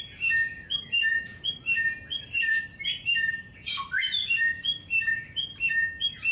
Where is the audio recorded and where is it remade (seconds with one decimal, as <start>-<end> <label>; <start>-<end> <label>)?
0.0-6.3 recorded